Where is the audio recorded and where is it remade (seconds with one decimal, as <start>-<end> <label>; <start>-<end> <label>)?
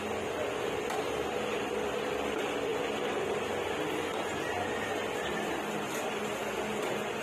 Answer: 0.0-2.7 remade; 2.7-5.5 recorded; 5.5-7.2 remade